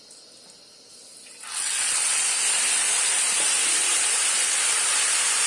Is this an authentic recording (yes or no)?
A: yes